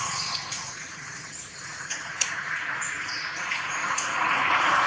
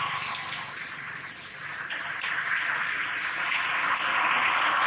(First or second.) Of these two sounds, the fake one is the first